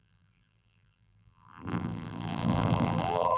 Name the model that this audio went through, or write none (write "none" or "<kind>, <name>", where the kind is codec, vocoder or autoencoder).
vocoder, BigVGAN v2